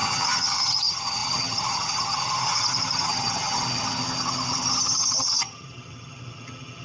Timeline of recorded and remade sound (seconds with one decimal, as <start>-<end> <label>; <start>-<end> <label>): 0.0-6.8 remade